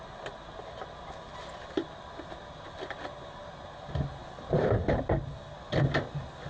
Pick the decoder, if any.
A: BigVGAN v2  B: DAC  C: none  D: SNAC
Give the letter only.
C